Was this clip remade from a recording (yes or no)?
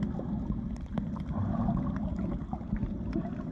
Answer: no